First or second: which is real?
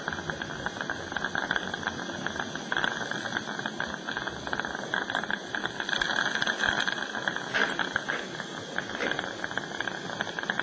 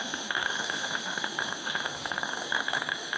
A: first